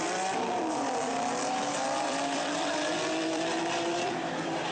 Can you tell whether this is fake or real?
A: fake